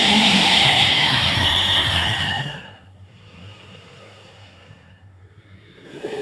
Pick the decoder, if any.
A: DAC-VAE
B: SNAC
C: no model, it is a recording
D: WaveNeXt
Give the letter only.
B